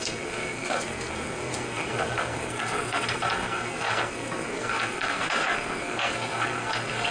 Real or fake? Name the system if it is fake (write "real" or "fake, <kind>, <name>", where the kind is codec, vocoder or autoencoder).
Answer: fake, codec, SNAC